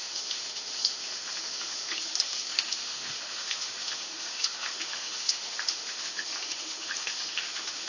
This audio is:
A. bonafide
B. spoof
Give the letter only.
B